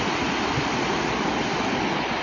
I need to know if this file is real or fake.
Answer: real